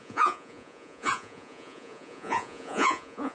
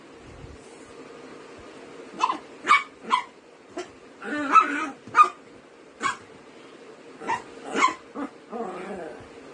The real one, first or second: second